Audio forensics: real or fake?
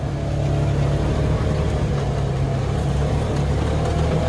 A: real